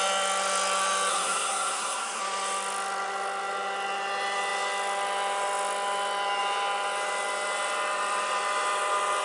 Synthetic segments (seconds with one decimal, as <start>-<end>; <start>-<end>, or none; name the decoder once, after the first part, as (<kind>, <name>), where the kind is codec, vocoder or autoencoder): 1.1-2.2 (codec, SNAC)